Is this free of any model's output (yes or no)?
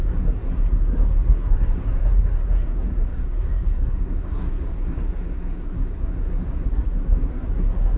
no